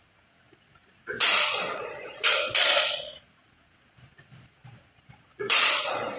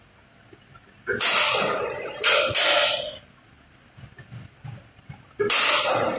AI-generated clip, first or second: first